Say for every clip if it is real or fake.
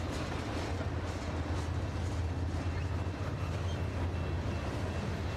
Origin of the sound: real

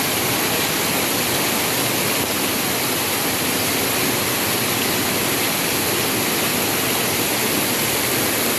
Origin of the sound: real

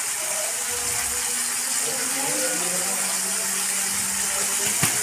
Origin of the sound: real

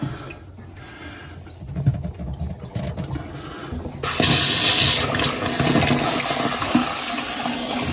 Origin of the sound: real